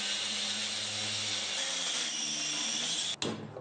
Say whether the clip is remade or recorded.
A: recorded